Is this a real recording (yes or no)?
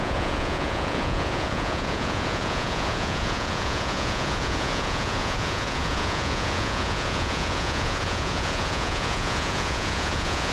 no